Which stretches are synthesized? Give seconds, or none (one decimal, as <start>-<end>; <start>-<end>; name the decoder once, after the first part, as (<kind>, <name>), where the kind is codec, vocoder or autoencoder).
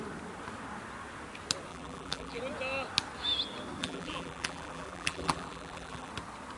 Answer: 1.7-2.4 (vocoder, BigVGAN v2); 3.8-6.1